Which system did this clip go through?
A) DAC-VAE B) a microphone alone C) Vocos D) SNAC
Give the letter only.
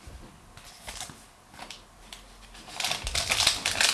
B